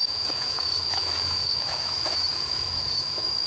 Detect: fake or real fake